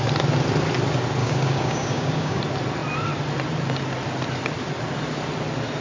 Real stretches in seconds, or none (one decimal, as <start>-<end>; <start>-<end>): 0.0-1.2; 2.4-5.8